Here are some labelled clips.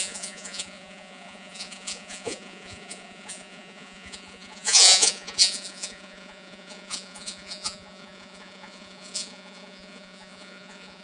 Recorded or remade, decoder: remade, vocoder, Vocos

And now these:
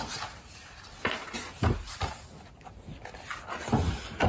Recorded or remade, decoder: recorded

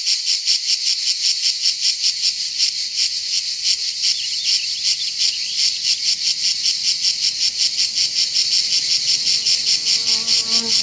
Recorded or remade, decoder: recorded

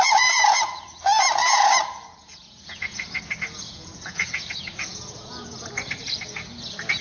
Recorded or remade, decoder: remade, vocoder, Vocos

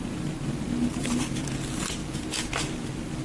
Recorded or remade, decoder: recorded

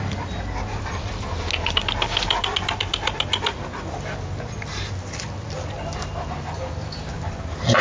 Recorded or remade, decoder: recorded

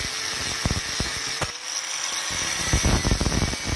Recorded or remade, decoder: recorded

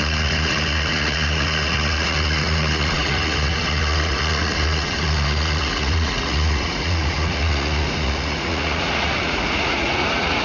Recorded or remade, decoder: remade, vocoder, Vocos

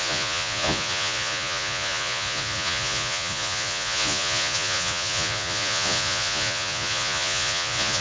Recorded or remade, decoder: remade, vocoder, Vocos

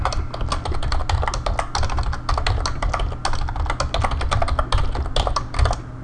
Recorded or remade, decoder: recorded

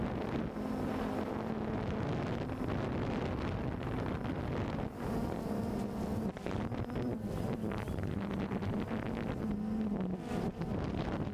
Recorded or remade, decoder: recorded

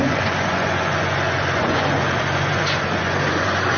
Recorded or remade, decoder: remade, vocoder, Vocos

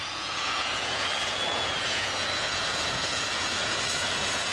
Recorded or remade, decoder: remade, vocoder, Vocos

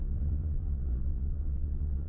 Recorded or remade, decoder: remade, vocoder, Vocos